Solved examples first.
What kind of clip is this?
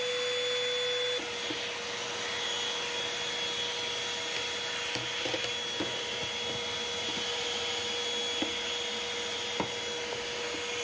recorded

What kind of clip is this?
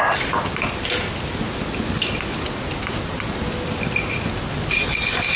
recorded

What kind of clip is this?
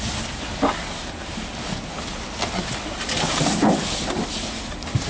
recorded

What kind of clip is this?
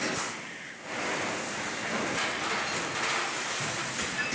recorded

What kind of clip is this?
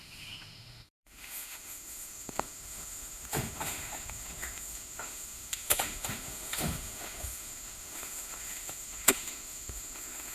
remade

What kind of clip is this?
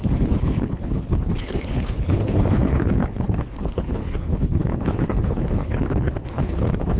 remade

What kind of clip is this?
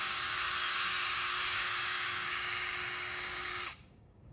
remade